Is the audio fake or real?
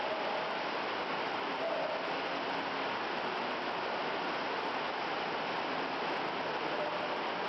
real